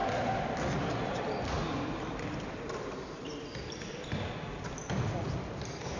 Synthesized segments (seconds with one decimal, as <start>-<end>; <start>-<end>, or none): none